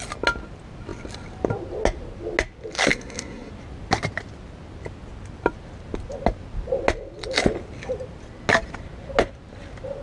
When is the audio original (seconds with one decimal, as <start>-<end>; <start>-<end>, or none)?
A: 0.0-2.9; 3.5-10.0